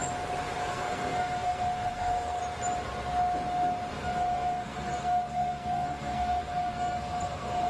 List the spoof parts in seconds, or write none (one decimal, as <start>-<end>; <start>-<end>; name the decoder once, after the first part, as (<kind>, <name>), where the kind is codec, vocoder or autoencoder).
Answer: 0.6-2.4 (codec, SNAC); 4.0-7.7

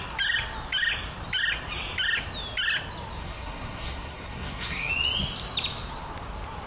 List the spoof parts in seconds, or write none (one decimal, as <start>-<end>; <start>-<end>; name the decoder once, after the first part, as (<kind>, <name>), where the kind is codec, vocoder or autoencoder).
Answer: 3.2-4.9 (codec, SNAC)

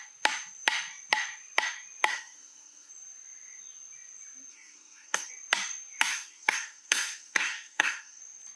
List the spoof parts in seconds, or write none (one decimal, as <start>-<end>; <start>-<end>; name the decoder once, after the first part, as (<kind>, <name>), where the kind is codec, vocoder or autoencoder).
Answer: 2.1-2.9 (codec, SNAC); 4.5-5.3; 6.1-8.2

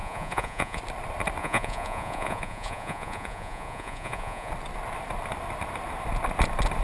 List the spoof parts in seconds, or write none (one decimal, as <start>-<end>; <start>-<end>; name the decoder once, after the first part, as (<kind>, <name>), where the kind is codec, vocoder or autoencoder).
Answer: 0.0-0.8 (vocoder, Vocos); 1.4-4.5

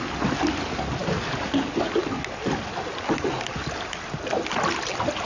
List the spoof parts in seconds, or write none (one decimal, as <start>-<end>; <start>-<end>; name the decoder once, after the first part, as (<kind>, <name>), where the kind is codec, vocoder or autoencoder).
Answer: none

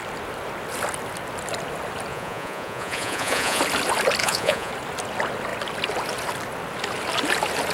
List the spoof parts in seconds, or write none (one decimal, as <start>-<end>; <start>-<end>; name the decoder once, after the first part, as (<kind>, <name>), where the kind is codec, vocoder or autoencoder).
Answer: 2.1-3.6 (vocoder, Vocos); 4.2-4.7

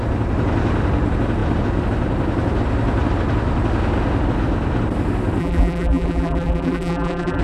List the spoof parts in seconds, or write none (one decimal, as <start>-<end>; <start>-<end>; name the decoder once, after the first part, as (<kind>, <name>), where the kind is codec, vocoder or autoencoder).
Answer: 5.4-7.4 (vocoder, BigVGAN v2)

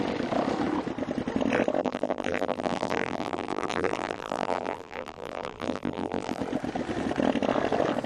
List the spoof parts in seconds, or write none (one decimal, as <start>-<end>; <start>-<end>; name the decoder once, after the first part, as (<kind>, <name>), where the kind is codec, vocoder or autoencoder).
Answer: 1.8-6.4 (vocoder, BigVGAN v2)